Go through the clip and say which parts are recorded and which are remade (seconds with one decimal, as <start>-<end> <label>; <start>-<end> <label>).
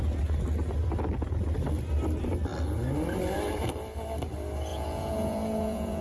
0.0-4.7 recorded; 4.7-6.0 remade